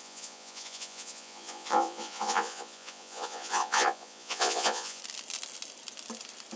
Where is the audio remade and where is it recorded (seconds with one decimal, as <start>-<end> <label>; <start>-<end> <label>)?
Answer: 0.0-5.0 remade; 5.0-6.6 recorded